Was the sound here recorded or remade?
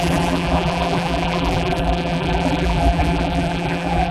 remade